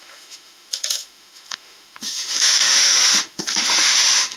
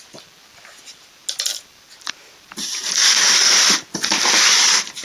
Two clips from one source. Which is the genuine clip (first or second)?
second